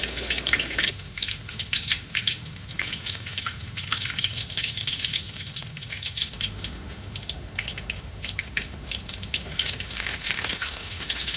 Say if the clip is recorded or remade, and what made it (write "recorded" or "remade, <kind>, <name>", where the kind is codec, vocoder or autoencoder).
remade, autoencoder, DAC-VAE